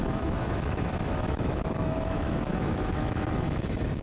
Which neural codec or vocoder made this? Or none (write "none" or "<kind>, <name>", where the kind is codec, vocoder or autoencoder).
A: autoencoder, DAC-VAE